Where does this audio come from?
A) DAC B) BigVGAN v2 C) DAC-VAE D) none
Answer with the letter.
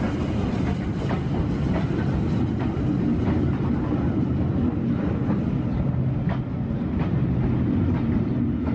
D